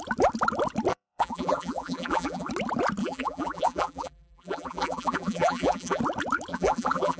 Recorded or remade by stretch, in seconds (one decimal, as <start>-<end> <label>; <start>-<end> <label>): 0.0-0.9 recorded; 0.9-2.5 remade; 2.5-3.0 recorded; 3.0-6.0 remade; 6.0-6.5 recorded; 6.5-7.2 remade